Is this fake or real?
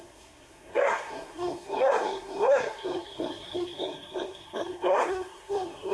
fake